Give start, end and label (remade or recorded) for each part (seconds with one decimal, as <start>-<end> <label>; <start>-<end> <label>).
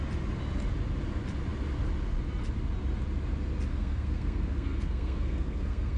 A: 0.0-3.7 recorded; 3.7-6.0 remade